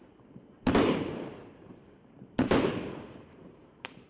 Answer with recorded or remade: remade